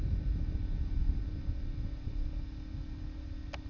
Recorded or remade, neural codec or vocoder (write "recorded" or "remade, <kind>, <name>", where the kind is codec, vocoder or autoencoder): recorded